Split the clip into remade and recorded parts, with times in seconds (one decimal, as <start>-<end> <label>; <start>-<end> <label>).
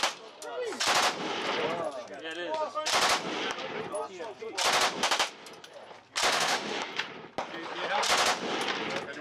0.0-6.3 recorded; 6.3-6.9 remade; 6.9-9.2 recorded